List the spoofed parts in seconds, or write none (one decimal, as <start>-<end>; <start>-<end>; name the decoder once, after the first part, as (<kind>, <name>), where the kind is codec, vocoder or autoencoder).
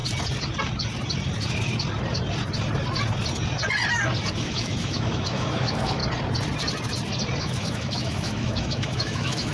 4.3-6.0 (autoencoder, DAC-VAE); 7.4-9.5